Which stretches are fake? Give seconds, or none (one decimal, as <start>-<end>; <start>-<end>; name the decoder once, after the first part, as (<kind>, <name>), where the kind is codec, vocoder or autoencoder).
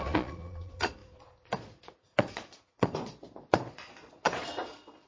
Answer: 0.0-5.1 (vocoder, Vocos)